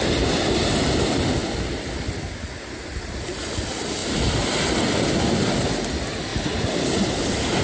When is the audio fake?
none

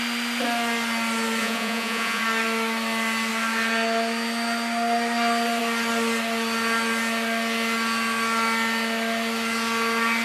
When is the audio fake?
1.4-2.2 (vocoder, Vocos)